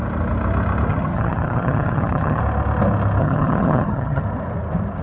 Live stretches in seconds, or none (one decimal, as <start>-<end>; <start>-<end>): 0.0-0.9; 2.4-3.2; 4.2-5.0